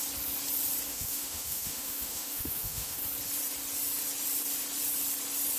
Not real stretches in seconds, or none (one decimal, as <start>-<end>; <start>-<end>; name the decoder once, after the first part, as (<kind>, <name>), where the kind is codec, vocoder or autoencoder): 0.9-3.0 (autoencoder, DAC-VAE)